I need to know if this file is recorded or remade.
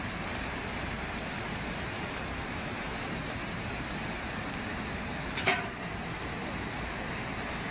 remade